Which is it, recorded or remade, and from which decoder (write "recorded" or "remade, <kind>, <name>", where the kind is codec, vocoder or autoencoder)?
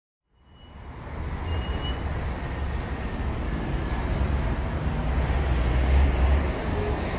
recorded